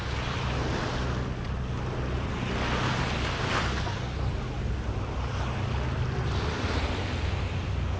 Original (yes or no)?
yes